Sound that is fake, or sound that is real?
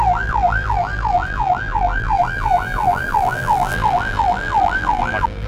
fake